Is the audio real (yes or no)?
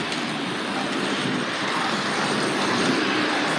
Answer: yes